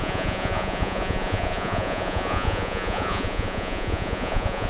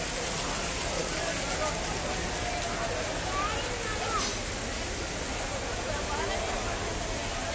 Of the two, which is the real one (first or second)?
second